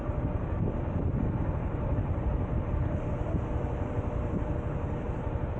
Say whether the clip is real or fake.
real